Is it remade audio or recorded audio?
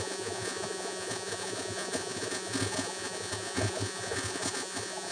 remade